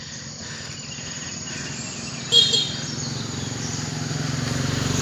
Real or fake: real